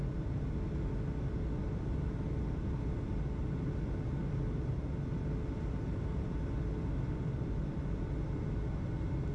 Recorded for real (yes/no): yes